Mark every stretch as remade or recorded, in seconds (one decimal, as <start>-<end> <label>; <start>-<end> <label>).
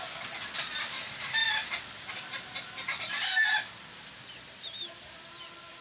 0.0-5.8 recorded